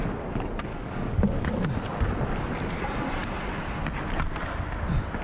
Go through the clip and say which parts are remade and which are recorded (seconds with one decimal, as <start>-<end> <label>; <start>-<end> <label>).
0.0-0.7 recorded; 0.7-1.6 remade; 1.6-5.2 recorded